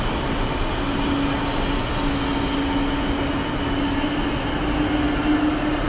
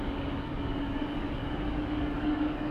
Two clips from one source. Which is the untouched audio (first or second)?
first